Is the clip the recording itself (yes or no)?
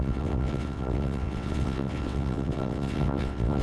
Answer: no